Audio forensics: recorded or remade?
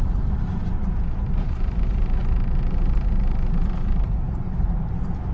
remade